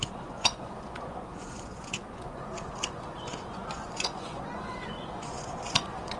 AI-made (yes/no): yes